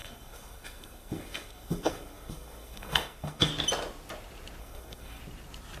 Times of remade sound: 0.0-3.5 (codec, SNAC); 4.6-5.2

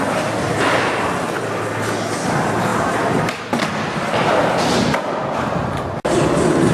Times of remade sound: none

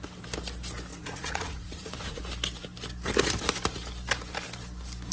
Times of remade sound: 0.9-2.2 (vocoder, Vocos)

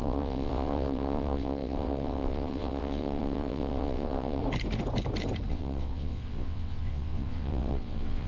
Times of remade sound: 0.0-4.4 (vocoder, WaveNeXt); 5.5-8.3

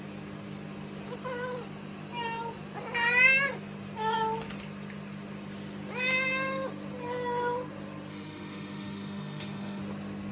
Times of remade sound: 8.1-9.8 (autoencoder, DAC-VAE)

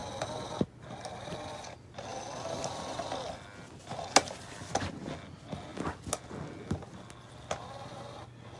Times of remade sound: none